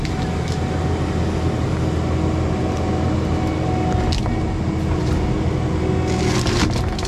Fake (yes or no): no